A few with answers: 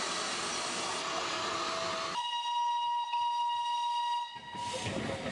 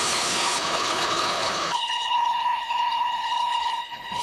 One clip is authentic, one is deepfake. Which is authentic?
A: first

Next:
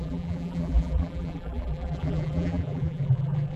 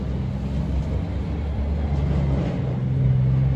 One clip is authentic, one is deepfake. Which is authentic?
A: second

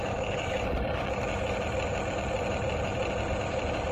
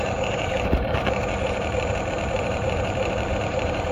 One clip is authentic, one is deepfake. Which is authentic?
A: first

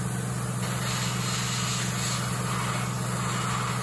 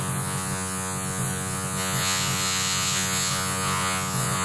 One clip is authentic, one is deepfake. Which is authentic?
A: first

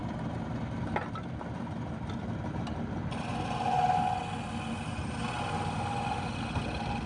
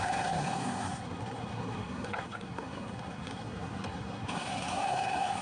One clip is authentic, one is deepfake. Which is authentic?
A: first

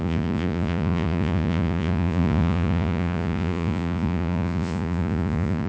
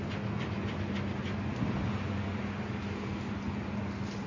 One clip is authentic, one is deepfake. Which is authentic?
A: second